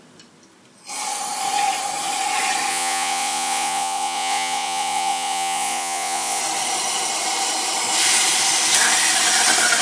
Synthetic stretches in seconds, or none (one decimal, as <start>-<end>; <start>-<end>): 2.7-6.4